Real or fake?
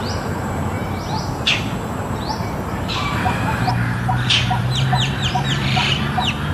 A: fake